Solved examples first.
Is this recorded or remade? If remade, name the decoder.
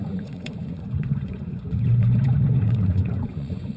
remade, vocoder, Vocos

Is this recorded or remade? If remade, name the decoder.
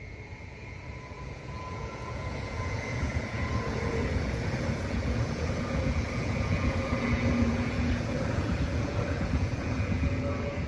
remade, vocoder, Vocos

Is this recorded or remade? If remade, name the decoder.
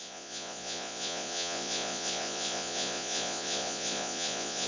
remade, vocoder, Vocos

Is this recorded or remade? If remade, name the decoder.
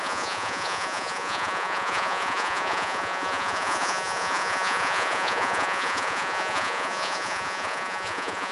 remade, vocoder, Vocos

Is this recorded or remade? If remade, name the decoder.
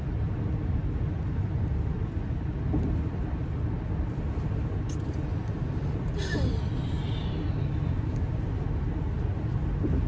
recorded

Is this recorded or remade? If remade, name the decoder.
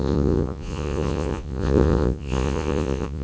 remade, vocoder, Vocos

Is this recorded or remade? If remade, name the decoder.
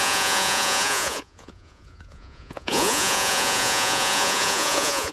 remade, vocoder, Vocos